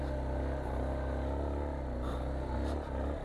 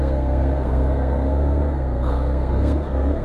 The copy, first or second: second